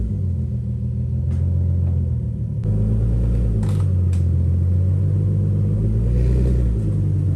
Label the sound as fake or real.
real